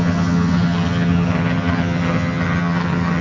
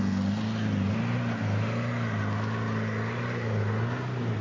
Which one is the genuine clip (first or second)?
second